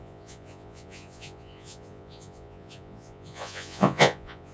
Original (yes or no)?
no